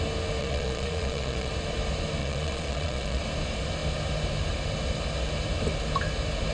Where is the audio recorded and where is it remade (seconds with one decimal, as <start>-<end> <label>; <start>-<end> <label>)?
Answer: 0.0-0.4 recorded; 0.4-1.5 remade; 1.5-2.2 recorded; 2.2-3.2 remade; 3.2-6.5 recorded